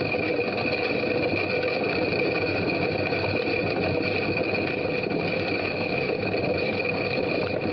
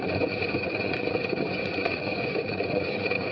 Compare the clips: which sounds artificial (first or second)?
second